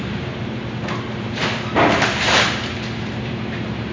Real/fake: fake